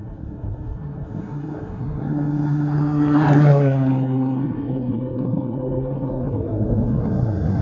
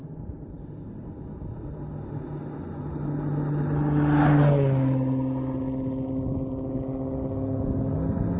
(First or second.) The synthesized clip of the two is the first